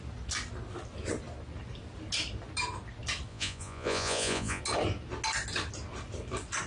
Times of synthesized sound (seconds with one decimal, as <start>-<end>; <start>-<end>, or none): 3.3-4.6